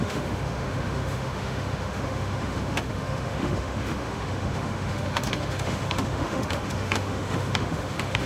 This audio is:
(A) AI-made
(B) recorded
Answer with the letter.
A